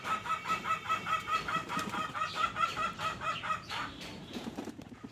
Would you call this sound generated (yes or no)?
yes